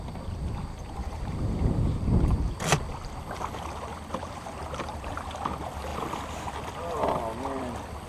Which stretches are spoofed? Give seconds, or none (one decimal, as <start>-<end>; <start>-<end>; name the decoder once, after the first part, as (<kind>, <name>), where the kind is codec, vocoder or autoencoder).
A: 1.0-1.7 (vocoder, BigVGAN v2); 4.2-5.2